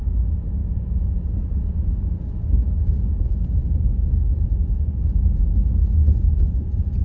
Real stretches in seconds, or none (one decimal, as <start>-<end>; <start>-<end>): 0.0-0.6; 1.2-7.0